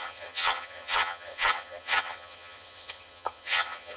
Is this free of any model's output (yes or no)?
no